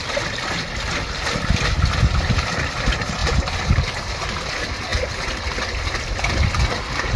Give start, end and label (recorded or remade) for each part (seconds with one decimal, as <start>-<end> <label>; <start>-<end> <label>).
0.0-3.2 recorded; 3.2-3.7 remade; 3.7-7.2 recorded